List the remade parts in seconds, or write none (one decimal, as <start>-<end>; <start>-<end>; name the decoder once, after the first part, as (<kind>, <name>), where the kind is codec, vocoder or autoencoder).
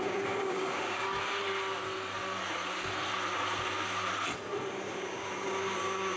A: 0.0-1.0 (codec, DAC); 4.7-6.2